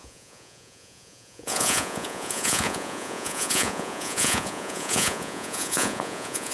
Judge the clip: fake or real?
fake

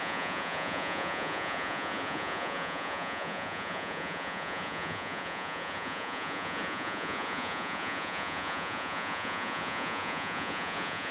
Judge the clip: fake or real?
fake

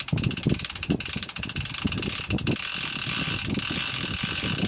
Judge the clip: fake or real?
real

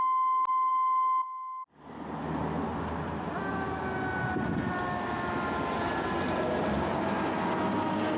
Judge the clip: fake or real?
real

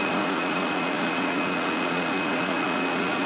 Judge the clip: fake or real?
fake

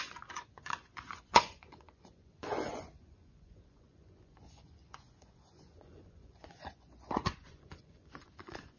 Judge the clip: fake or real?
fake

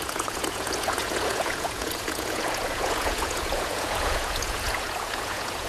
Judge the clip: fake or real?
fake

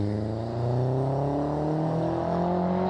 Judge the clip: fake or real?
real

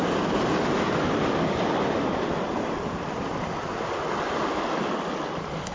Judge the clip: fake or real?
real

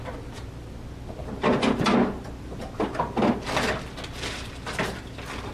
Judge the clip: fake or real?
real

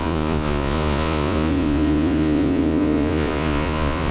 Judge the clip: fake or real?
fake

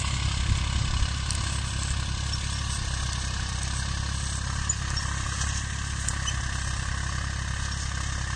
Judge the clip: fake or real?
real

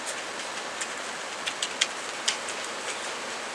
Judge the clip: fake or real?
real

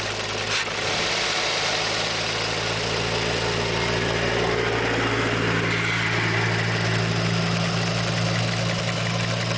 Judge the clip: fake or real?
real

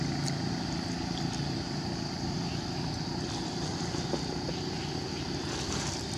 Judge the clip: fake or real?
real